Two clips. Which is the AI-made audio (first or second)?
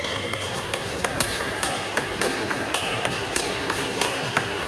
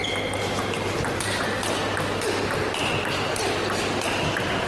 first